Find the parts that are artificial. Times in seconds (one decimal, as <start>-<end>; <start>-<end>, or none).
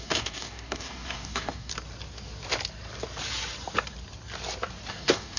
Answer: 0.0-1.7; 4.9-5.4